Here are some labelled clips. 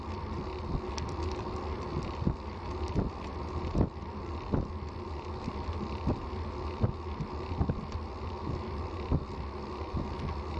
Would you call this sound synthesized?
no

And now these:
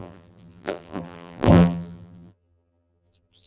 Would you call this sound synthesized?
yes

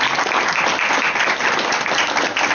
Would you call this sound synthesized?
no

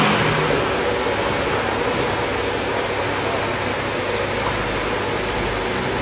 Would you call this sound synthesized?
no